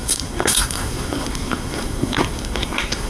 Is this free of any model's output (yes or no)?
no